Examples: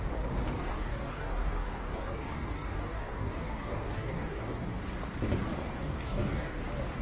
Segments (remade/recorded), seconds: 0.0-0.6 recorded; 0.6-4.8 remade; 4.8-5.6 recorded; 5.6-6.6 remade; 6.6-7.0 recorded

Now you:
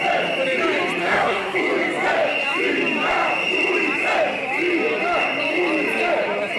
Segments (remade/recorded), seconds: 0.0-1.0 recorded; 1.0-1.6 remade; 1.6-6.6 recorded

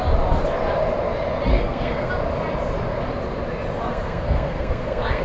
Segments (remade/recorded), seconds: 0.0-1.5 recorded; 1.5-2.1 remade; 2.1-3.9 recorded; 3.9-5.2 remade

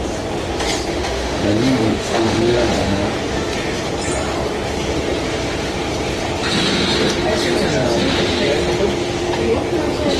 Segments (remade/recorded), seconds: 0.0-0.9 recorded; 0.9-3.1 remade; 3.1-10.2 recorded

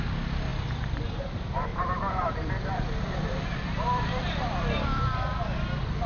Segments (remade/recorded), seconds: 0.0-1.7 recorded; 1.7-5.4 remade; 5.4-6.1 recorded

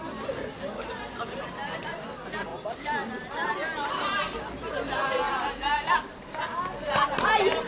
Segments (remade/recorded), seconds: 0.0-7.7 recorded

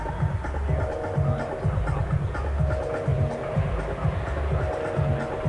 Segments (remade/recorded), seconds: 0.0-3.1 recorded; 3.1-4.6 remade; 4.6-5.5 recorded